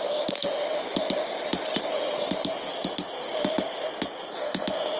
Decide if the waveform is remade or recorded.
recorded